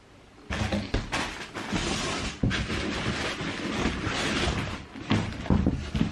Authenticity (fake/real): real